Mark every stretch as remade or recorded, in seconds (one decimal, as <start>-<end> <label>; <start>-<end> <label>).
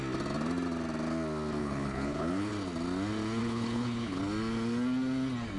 0.0-1.6 recorded; 1.6-2.5 remade; 2.5-3.4 recorded; 3.4-4.2 remade; 4.2-5.6 recorded